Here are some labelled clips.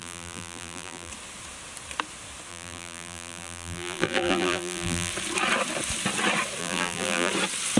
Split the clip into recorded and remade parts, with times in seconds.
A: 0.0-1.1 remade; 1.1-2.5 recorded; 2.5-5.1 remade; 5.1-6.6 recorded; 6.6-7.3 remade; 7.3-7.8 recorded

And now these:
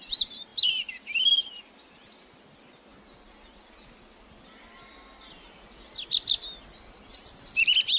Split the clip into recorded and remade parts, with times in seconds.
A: 0.0-2.9 remade; 2.9-7.6 recorded; 7.6-8.0 remade

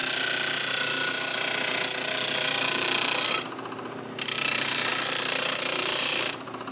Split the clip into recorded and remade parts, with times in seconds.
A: 0.0-3.3 recorded; 3.3-6.7 remade

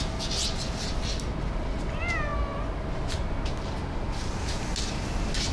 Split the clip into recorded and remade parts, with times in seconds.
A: 0.0-5.5 recorded

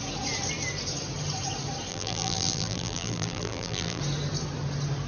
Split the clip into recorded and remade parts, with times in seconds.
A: 0.0-1.9 recorded; 1.9-4.0 remade; 4.0-5.1 recorded